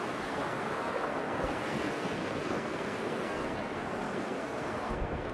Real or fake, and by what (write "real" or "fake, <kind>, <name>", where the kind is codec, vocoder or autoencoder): fake, codec, SNAC